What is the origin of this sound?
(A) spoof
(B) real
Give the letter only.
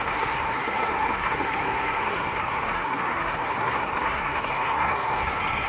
A